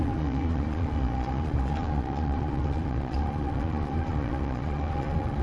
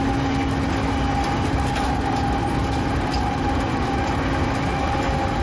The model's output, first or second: first